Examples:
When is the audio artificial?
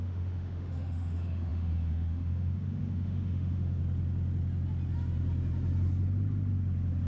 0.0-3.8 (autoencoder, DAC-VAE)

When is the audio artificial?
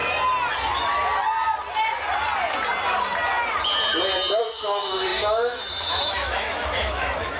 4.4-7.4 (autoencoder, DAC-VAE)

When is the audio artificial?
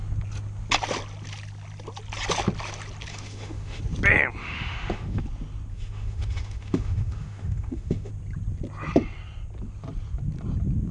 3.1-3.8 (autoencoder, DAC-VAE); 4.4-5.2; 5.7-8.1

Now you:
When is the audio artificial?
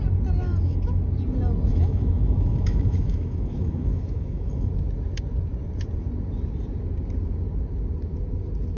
0.4-1.0 (autoencoder, DAC-VAE); 1.7-4.7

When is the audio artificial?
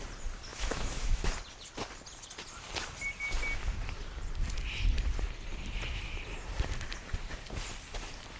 0.5-1.3 (autoencoder, DAC-VAE)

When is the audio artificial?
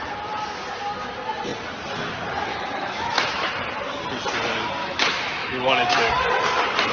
2.5-3.5 (autoencoder, DAC-VAE); 4.8-6.1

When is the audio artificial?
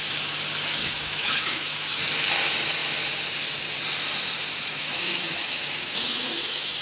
0.8-2.1 (autoencoder, DAC-VAE); 4.7-6.8